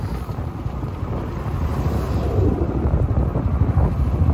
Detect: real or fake real